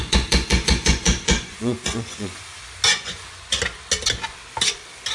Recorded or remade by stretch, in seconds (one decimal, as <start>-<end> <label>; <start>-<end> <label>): 0.0-2.4 remade; 2.4-2.9 recorded; 2.9-3.6 remade; 3.6-5.1 recorded